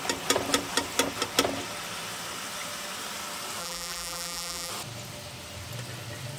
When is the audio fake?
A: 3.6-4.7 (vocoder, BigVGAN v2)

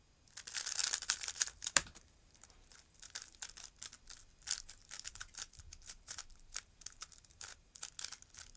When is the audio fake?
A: 0.8-3.4 (vocoder, BigVGAN v2); 4.8-7.9

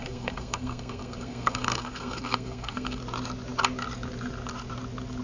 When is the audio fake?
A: 0.0-3.0 (codec, SNAC)

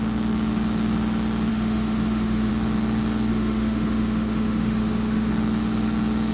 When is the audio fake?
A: 1.5-2.5 (autoencoder, DAC-VAE); 3.3-5.3

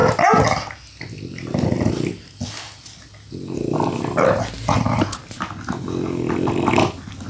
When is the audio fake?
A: none

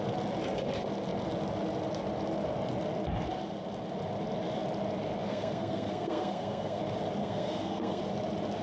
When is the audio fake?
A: 5.3-6.8 (codec, SNAC); 7.2-8.0

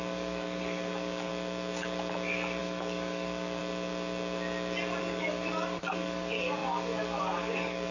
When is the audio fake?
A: 0.0-1.3 (codec, DAC); 2.6-3.6; 5.0-7.9

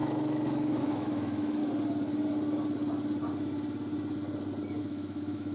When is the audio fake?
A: 0.0-1.6 (autoencoder, DAC-VAE); 4.8-5.5